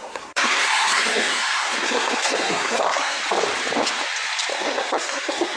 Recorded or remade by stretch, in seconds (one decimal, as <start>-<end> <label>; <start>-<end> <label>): 0.0-3.2 remade; 3.2-4.5 recorded; 4.5-5.6 remade